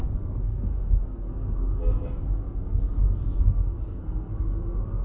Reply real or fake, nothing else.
fake